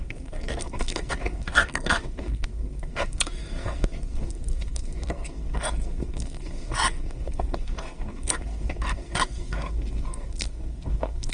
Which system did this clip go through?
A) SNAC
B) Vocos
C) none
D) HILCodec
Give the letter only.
A